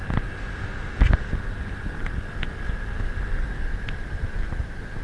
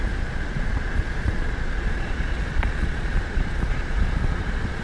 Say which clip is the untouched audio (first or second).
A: first